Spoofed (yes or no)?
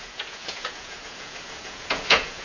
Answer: yes